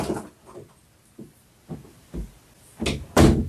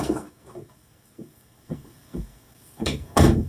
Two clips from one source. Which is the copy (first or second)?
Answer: second